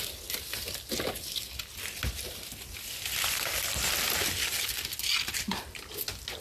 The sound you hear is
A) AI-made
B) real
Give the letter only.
B